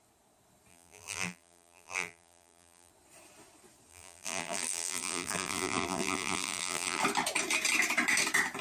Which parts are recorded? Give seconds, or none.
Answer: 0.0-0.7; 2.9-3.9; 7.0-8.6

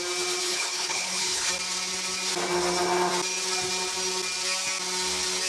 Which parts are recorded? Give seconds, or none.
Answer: 0.0-0.4; 1.5-5.5